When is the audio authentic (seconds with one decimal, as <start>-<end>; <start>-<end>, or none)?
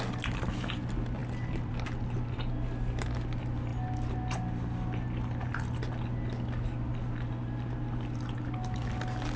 0.0-9.4